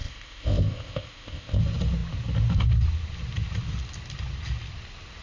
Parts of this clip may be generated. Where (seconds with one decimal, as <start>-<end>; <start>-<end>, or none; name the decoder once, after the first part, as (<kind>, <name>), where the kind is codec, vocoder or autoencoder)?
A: 0.0-1.6 (codec, ZipCodec)